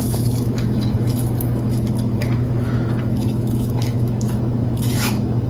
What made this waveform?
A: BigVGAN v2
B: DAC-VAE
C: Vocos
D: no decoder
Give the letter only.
B